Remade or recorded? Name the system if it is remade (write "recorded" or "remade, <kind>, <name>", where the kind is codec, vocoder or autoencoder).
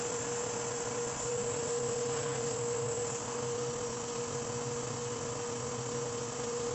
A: recorded